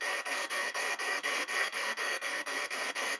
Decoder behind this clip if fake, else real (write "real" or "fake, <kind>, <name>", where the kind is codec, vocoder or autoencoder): fake, codec, SNAC